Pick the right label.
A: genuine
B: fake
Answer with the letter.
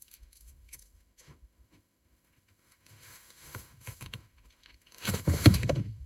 B